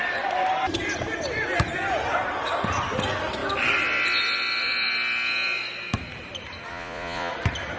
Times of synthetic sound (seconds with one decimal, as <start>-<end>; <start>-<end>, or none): 6.7-7.3